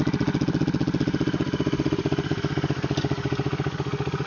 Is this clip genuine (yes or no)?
yes